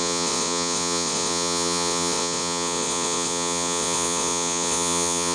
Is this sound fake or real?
fake